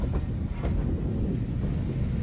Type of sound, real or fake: real